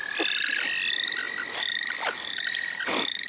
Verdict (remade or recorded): recorded